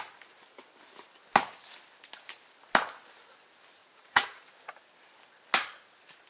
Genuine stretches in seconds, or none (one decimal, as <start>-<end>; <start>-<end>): 0.0-3.8; 4.6-6.3

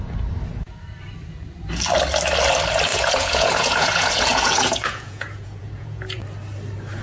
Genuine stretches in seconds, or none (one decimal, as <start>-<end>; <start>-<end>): 0.0-2.9; 6.2-7.0

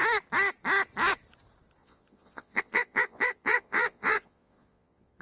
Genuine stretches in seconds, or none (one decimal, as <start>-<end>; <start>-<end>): 0.0-1.8

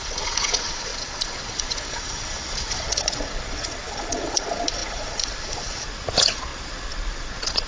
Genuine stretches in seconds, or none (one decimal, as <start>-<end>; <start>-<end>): none

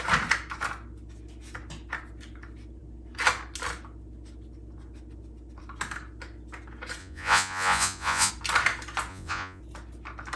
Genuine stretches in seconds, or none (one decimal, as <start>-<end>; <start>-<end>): 0.0-7.0; 8.3-9.1; 9.6-10.4

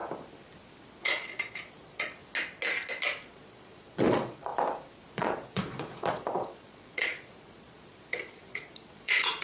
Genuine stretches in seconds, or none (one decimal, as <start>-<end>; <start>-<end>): 0.0-1.0; 2.2-3.3; 4.5-5.1